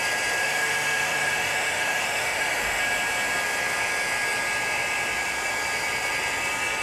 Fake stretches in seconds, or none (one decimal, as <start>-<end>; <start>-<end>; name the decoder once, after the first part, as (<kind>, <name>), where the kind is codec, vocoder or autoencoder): 0.4-2.8 (autoencoder, DAC-VAE)